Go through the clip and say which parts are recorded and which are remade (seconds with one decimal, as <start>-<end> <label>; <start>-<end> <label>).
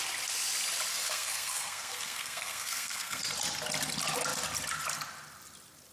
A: 0.0-0.9 recorded; 0.9-3.2 remade; 3.2-5.9 recorded